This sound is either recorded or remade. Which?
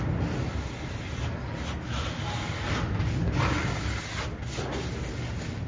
recorded